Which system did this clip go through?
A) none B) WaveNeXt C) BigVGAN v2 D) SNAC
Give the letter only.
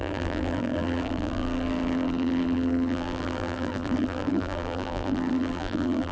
C